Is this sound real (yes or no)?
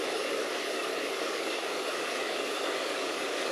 no